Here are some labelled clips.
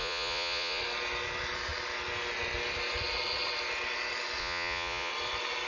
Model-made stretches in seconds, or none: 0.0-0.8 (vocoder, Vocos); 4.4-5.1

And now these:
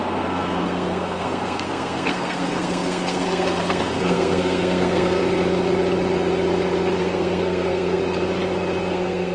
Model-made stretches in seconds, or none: 0.0-5.2 (codec, SNAC); 7.0-8.0; 8.9-9.3